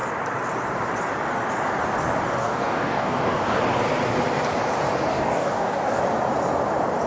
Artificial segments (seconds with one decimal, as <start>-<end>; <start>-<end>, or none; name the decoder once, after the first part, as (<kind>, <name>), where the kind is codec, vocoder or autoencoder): 2.4-3.6 (codec, DAC); 5.1-6.0